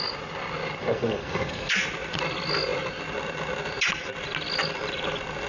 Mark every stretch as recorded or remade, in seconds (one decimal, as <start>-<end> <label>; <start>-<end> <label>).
0.0-0.8 recorded; 0.8-1.7 remade; 1.7-5.5 recorded